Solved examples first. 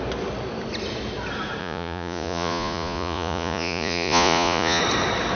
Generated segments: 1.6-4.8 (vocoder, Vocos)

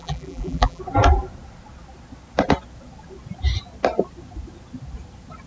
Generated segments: 0.0-0.8 (vocoder, BigVGAN v2)

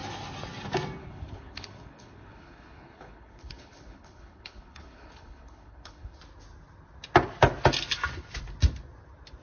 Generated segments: 1.0-6.2 (codec, HILCodec)